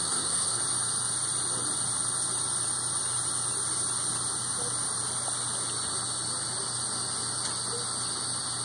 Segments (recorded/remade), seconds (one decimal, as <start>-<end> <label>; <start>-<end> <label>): 0.0-0.6 remade; 0.6-8.6 recorded